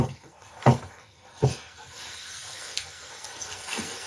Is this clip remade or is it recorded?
remade